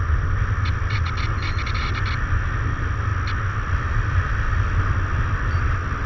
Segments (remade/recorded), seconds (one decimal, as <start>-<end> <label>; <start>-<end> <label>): 0.0-6.1 recorded